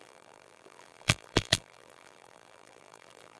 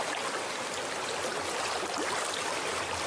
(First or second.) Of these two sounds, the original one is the second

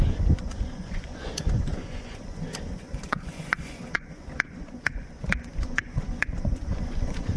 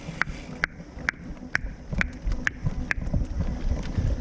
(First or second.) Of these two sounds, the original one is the second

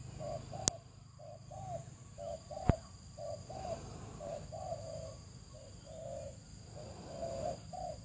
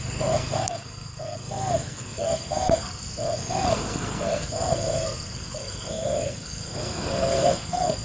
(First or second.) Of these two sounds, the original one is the first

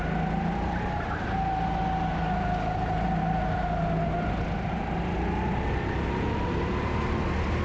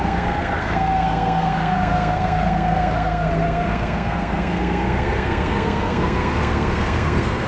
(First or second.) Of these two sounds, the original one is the first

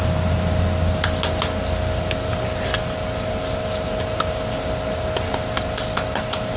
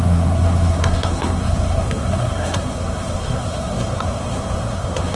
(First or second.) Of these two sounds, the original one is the first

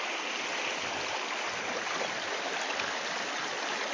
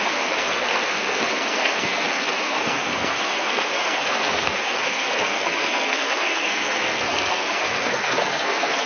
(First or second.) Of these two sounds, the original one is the first